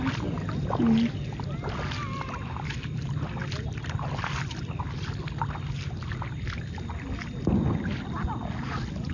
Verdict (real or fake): real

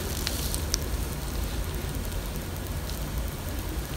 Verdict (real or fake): real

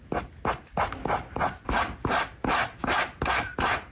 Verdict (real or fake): real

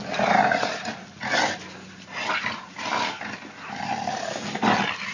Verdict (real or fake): real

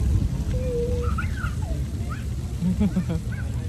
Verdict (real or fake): real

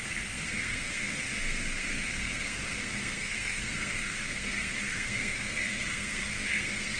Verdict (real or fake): fake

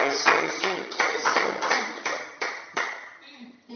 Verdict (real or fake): fake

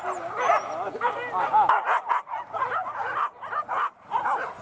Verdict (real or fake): real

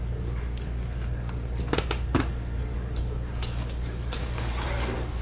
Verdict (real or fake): fake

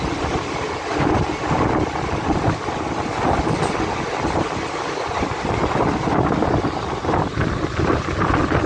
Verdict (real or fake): real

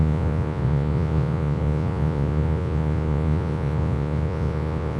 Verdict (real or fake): fake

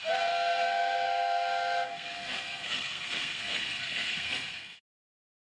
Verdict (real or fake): fake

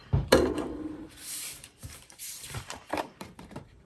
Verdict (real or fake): fake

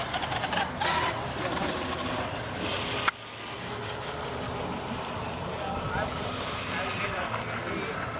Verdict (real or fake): real